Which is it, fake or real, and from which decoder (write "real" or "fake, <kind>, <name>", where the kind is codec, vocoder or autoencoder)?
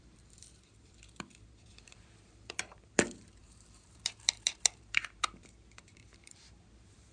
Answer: fake, vocoder, BigVGAN v2